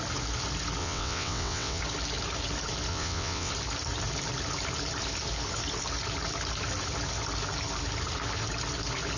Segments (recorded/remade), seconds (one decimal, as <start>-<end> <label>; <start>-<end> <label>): 0.0-0.8 recorded; 0.8-1.8 remade; 1.8-2.9 recorded; 2.9-3.5 remade; 3.5-9.2 recorded